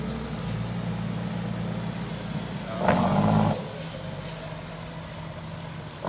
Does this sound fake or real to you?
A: real